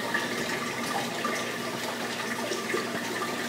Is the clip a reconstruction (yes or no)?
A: no